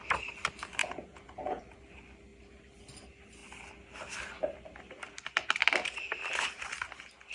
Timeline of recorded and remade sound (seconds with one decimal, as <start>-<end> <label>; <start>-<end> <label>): 0.0-0.8 recorded; 0.8-1.6 remade; 1.6-7.3 recorded